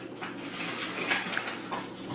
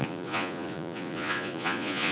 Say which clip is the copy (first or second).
second